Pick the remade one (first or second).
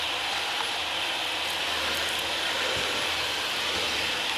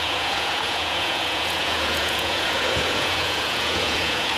second